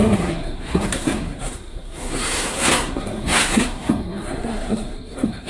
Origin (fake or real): fake